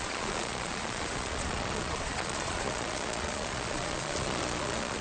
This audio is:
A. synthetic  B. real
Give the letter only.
A